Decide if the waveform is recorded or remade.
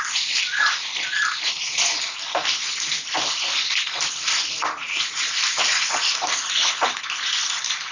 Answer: remade